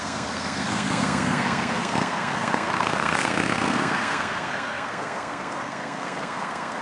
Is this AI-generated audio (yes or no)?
yes